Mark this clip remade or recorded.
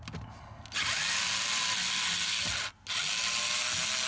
recorded